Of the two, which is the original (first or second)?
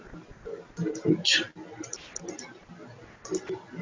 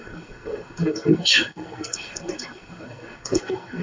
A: first